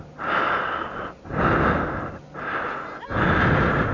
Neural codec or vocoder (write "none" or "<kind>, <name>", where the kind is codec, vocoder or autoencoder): none